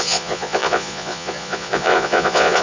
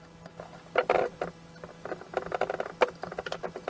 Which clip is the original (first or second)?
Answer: second